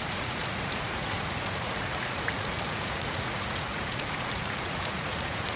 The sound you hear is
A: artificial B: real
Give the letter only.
A